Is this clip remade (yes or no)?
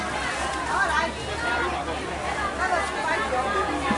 no